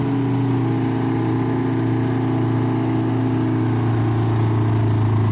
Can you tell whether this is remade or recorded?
recorded